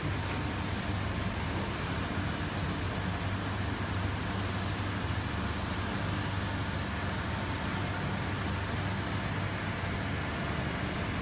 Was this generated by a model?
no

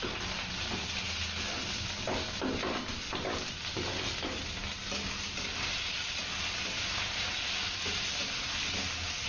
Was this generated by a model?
no